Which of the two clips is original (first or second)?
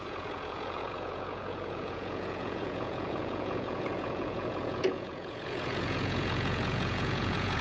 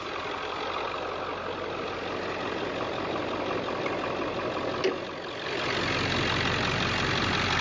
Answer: second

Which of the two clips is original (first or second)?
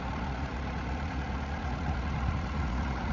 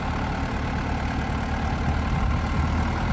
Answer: second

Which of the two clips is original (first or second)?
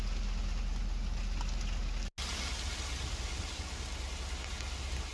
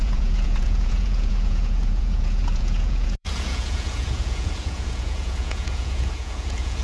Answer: first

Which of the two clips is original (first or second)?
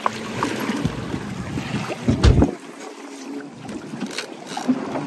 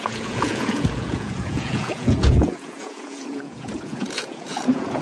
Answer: first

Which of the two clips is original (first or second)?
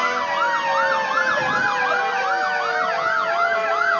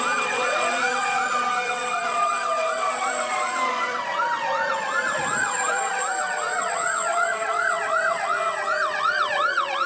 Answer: first